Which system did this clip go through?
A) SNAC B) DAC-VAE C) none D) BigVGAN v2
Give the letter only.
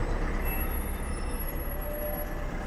C